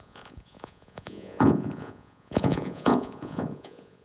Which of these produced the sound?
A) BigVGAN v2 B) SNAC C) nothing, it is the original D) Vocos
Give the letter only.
D